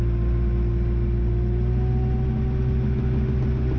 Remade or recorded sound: recorded